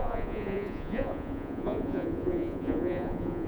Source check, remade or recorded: remade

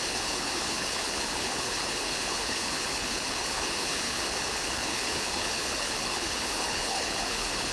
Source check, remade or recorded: remade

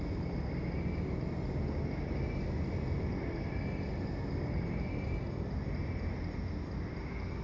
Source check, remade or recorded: recorded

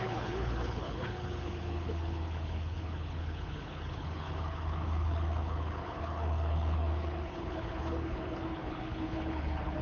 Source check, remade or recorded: remade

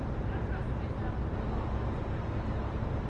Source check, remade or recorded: recorded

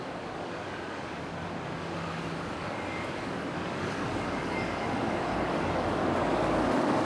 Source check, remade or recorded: remade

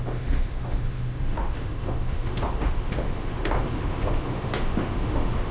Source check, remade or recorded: remade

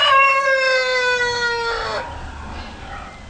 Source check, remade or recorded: recorded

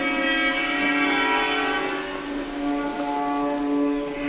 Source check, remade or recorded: recorded